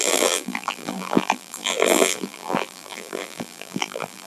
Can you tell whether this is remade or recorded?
remade